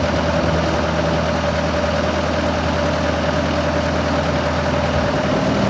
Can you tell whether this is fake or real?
real